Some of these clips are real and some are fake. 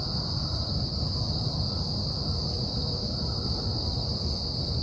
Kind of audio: real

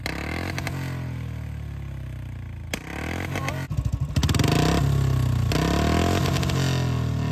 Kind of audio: real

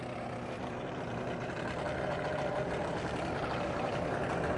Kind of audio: fake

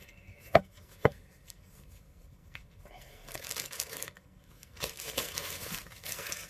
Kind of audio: fake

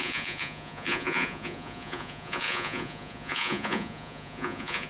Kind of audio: fake